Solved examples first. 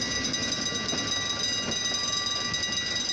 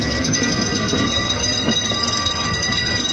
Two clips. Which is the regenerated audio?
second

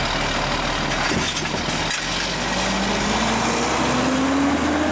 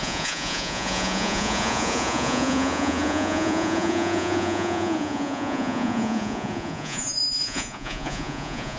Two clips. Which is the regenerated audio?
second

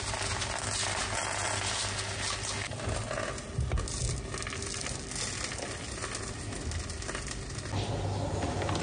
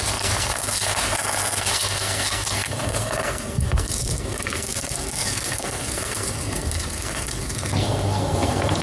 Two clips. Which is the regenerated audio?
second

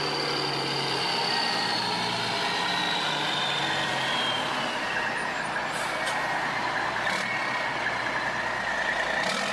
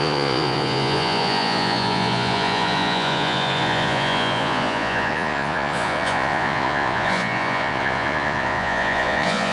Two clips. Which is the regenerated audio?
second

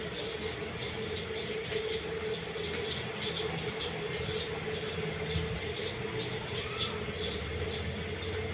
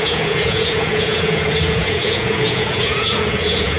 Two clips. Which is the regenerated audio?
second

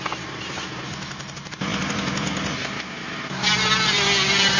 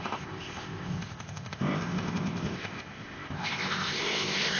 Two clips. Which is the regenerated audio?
second